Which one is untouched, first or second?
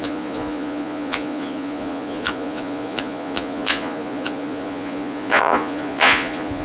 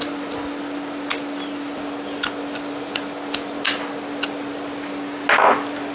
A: second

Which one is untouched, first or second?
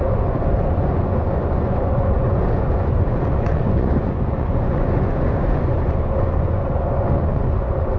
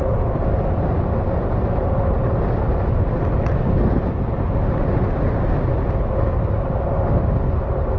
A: second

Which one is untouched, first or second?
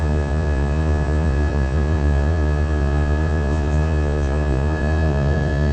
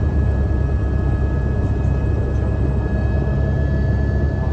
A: second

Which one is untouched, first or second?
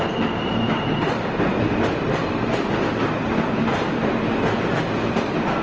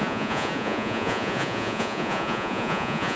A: first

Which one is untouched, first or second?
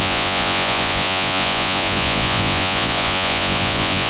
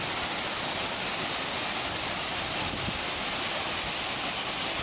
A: second